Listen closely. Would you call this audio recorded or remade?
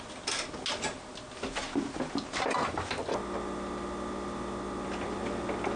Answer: recorded